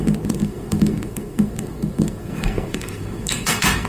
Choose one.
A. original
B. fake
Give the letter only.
B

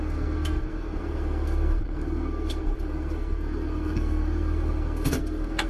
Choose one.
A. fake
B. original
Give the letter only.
A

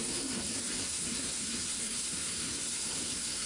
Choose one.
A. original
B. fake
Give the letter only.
B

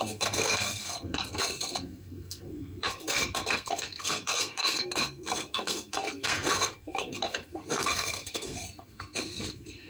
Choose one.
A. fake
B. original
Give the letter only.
A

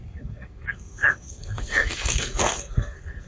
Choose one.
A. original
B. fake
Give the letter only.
B